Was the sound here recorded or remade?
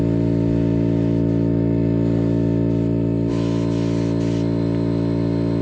recorded